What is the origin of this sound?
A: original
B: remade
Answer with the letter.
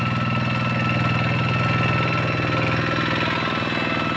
A